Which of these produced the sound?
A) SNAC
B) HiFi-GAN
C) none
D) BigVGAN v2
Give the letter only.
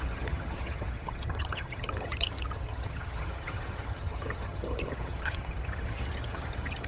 B